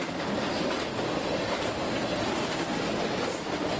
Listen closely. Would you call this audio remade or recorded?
recorded